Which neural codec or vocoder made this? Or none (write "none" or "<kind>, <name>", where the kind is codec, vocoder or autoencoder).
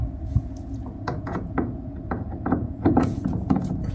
vocoder, Vocos